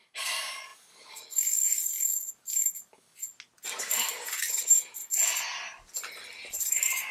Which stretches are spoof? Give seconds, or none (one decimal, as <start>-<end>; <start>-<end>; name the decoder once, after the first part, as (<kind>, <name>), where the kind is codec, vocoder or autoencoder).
0.0-3.2 (codec, DAC); 4.4-5.0; 6.6-7.1